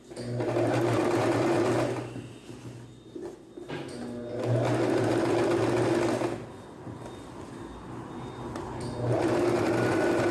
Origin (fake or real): real